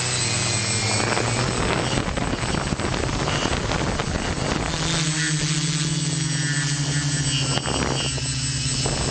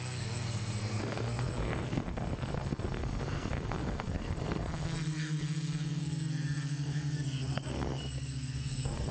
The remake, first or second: second